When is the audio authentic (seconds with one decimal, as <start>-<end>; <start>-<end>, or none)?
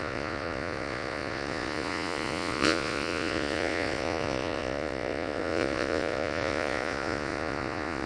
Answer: none